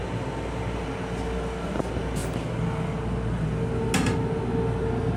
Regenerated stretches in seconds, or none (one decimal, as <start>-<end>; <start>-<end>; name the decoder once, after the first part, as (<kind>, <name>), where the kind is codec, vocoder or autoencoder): none